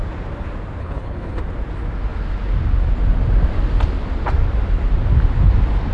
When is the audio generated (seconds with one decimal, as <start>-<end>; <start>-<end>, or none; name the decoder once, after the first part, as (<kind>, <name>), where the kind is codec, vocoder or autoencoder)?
0.8-1.4 (codec, HILCodec)